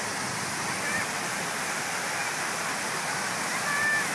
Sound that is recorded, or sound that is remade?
recorded